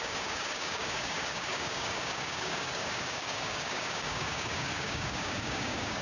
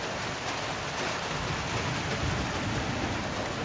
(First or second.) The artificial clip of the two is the first